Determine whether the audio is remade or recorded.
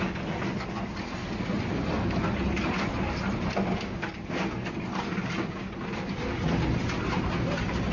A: recorded